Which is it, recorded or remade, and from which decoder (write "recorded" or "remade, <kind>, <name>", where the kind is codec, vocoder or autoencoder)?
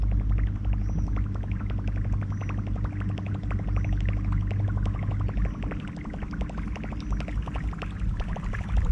recorded